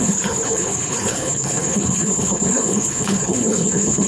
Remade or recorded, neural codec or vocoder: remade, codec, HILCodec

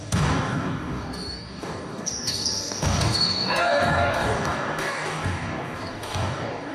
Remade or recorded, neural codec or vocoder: remade, codec, DAC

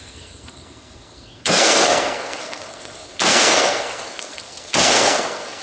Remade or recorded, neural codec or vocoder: remade, codec, SNAC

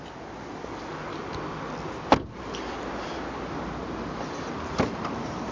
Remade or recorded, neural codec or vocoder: recorded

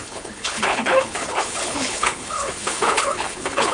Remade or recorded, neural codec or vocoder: remade, codec, HILCodec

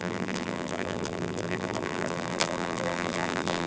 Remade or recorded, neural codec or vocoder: remade, vocoder, BigVGAN v2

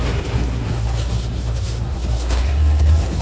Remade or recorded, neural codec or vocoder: remade, codec, SNAC